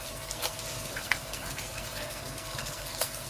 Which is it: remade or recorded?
remade